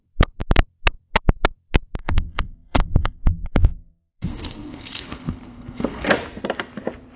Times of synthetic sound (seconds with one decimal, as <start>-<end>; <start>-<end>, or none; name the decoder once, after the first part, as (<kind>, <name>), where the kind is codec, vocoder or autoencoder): 2.0-6.1 (codec, SNAC)